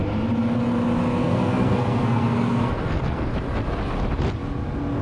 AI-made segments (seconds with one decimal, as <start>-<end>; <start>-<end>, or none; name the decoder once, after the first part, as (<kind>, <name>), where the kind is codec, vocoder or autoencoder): 1.2-3.3 (codec, SNAC)